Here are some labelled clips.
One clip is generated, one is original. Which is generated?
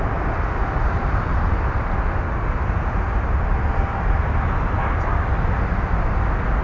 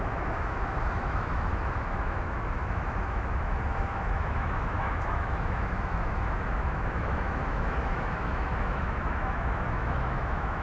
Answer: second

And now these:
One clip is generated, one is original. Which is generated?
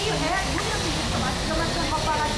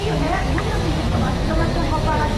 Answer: second